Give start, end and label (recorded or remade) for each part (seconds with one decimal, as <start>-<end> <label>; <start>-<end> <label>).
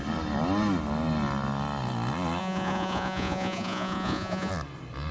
0.0-2.4 recorded; 2.4-4.5 remade; 4.5-5.1 recorded